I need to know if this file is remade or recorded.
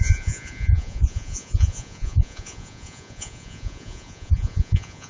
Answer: remade